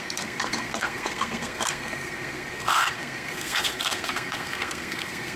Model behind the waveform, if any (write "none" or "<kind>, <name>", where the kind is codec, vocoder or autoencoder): codec, SNAC